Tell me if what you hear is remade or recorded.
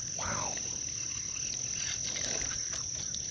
recorded